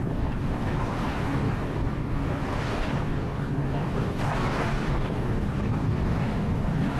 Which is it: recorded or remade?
remade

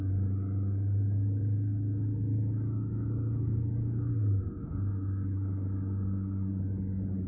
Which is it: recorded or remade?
remade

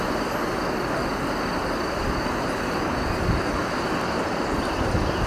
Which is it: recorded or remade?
recorded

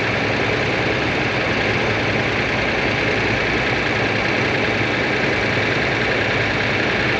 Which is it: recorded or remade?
recorded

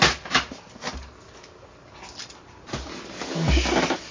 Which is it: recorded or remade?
recorded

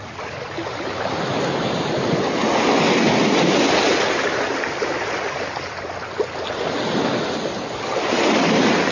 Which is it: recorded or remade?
recorded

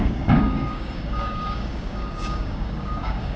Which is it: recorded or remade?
remade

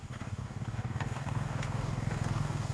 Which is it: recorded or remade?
remade